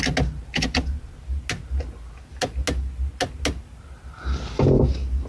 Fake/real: real